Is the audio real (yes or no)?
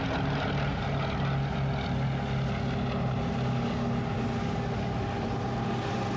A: yes